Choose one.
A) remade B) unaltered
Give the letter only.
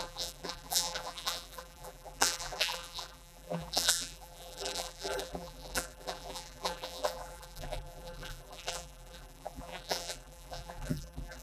A